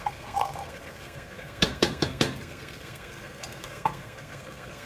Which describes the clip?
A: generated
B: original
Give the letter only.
A